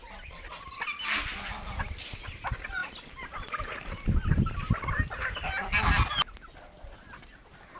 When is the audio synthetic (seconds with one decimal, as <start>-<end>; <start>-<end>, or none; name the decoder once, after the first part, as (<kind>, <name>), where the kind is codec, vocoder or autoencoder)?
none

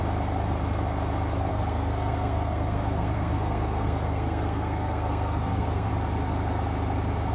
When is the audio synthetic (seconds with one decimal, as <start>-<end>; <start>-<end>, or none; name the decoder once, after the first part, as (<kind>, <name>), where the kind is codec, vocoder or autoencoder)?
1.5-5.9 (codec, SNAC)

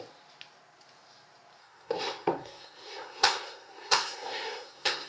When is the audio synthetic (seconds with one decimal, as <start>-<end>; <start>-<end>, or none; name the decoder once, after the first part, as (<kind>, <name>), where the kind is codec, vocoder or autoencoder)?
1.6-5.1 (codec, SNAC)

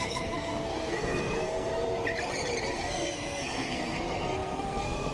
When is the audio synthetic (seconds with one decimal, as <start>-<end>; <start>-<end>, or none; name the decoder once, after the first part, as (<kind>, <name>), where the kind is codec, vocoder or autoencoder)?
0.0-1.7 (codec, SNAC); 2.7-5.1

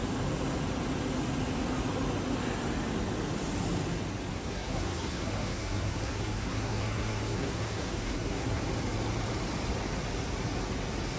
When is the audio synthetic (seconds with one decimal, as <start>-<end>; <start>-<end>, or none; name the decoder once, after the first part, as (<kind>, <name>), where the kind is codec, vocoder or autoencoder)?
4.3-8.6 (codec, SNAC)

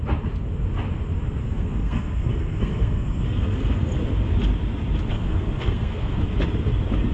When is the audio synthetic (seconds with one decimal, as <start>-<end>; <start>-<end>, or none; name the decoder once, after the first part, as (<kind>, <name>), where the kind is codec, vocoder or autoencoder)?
1.4-3.9 (codec, SNAC); 5.1-6.2